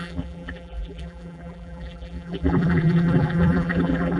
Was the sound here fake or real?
fake